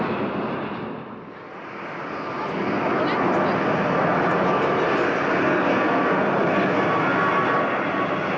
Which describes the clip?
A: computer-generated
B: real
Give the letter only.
B